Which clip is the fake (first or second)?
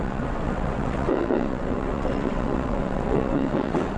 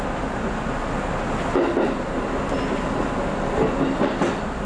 first